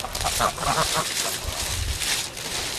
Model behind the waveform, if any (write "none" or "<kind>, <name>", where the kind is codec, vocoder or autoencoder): none